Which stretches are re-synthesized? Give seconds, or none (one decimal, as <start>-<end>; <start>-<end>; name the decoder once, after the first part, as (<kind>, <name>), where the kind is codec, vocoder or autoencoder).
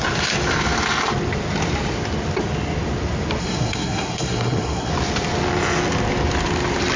3.4-4.9 (codec, SNAC)